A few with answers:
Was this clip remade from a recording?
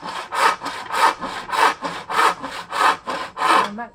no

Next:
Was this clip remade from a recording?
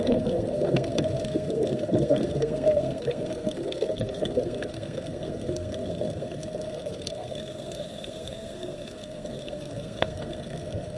yes